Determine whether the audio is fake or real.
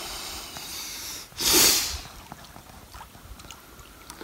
real